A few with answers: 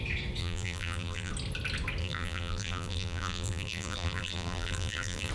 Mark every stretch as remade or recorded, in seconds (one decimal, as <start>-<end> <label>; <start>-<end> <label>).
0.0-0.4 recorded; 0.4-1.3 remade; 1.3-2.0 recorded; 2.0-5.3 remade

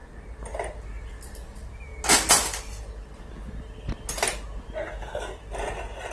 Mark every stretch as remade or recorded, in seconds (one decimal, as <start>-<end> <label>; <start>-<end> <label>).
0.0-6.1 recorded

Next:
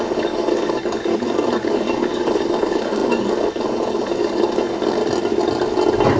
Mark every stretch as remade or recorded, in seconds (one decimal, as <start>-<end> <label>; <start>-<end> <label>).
0.0-1.1 remade; 1.1-1.7 recorded; 1.7-5.0 remade; 5.0-6.2 recorded